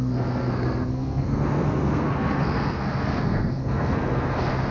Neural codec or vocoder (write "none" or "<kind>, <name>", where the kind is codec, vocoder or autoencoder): codec, SNAC